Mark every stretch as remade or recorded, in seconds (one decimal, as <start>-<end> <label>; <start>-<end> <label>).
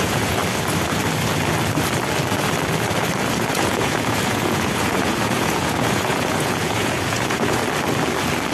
0.0-0.4 remade; 0.4-3.5 recorded; 3.5-7.6 remade; 7.6-8.5 recorded